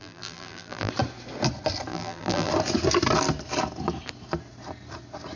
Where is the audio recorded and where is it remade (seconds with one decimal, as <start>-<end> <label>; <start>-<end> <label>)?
0.0-0.9 remade; 0.9-1.9 recorded; 1.9-2.5 remade; 2.5-5.4 recorded